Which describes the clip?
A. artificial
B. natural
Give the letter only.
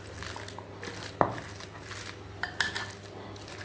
B